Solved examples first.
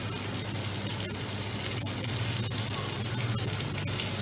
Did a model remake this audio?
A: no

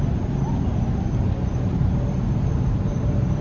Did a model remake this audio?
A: no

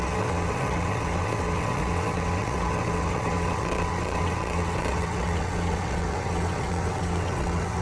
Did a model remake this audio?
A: yes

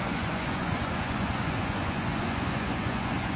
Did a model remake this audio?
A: yes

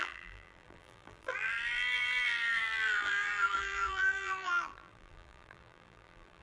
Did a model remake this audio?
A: yes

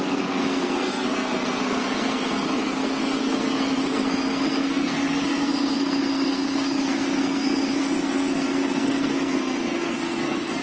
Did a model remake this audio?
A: yes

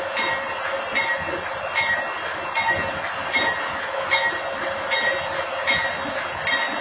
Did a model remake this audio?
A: no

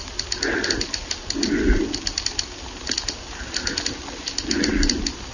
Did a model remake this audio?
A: no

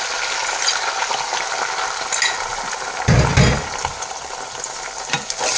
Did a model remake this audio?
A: no